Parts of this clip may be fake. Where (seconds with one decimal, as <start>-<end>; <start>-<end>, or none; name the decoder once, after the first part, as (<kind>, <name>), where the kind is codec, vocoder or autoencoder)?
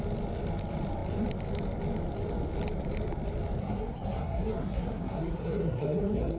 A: 3.6-6.4 (codec, SNAC)